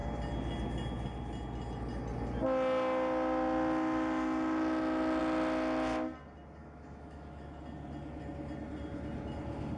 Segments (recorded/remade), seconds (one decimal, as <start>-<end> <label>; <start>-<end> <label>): 0.0-6.6 recorded; 6.6-7.6 remade; 7.6-9.8 recorded